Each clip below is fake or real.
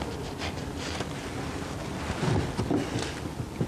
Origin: real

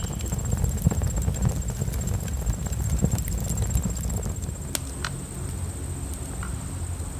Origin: real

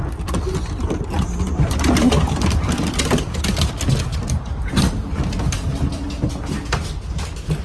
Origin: real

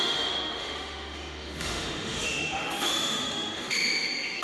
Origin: fake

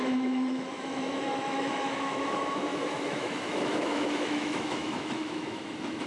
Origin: fake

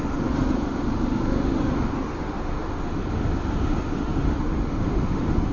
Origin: fake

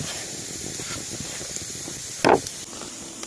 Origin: real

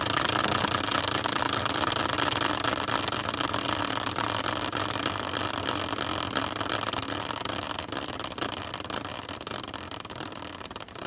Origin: real